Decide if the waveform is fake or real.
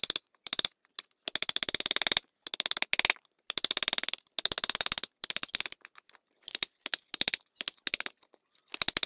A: real